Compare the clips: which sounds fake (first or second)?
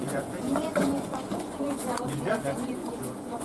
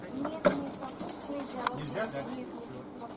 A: first